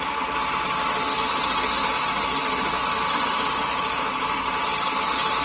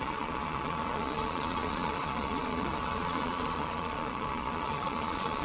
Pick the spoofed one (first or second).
second